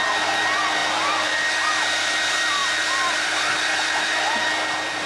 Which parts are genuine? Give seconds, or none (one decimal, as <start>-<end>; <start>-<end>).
0.0-0.8; 1.5-2.6; 4.3-5.1